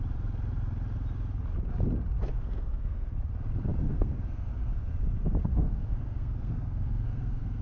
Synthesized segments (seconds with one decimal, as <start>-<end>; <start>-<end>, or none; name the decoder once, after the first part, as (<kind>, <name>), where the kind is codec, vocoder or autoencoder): 2.3-3.1 (codec, SNAC); 3.8-4.9; 5.4-7.6